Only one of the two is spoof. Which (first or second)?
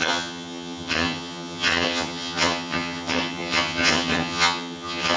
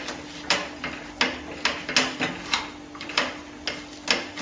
first